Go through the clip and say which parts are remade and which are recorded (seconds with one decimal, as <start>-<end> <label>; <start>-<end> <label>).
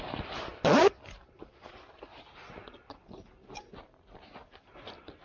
0.0-5.2 recorded